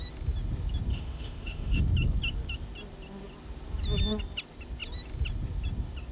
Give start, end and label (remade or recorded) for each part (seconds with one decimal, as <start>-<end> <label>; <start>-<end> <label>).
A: 0.0-0.9 recorded; 0.9-1.8 remade; 1.8-6.1 recorded